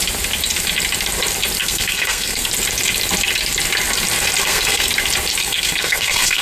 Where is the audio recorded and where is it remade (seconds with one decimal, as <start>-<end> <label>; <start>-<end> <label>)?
0.0-1.6 recorded; 1.6-2.5 remade; 2.5-4.4 recorded; 4.4-4.9 remade; 4.9-5.4 recorded; 5.4-6.4 remade